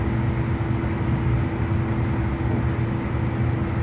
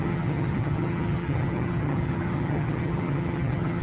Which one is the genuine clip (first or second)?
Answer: first